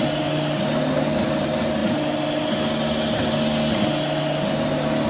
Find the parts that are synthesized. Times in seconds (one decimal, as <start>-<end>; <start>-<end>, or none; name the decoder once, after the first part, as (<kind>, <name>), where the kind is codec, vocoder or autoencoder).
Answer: none